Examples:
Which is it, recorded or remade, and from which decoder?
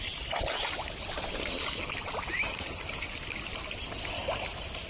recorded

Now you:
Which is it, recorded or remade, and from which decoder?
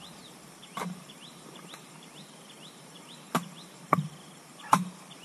remade, vocoder, BigVGAN v2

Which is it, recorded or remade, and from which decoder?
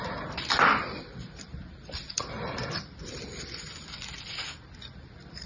remade, vocoder, BigVGAN v2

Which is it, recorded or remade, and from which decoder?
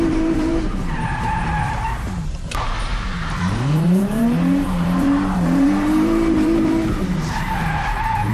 remade, vocoder, BigVGAN v2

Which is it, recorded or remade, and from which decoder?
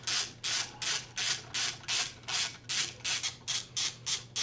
recorded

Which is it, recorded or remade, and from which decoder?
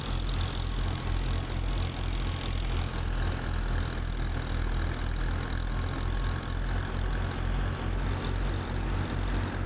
recorded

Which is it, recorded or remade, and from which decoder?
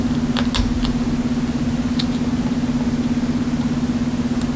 recorded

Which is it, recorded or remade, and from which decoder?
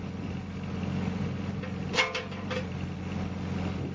recorded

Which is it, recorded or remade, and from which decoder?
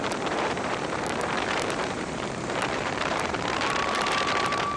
remade, vocoder, BigVGAN v2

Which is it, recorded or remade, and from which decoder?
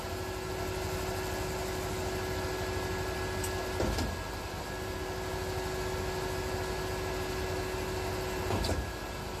recorded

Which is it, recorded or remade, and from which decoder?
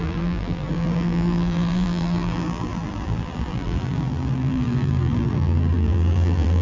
remade, vocoder, BigVGAN v2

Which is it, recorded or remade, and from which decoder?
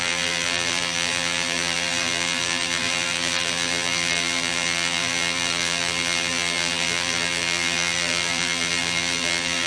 remade, vocoder, BigVGAN v2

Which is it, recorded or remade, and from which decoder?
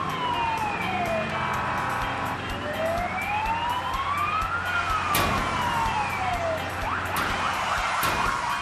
recorded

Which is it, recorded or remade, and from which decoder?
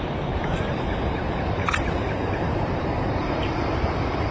remade, vocoder, BigVGAN v2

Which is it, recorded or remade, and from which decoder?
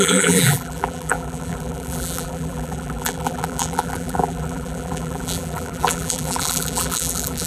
remade, vocoder, BigVGAN v2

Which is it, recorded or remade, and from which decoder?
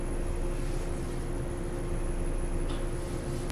recorded